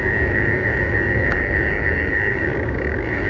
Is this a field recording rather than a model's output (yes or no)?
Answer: no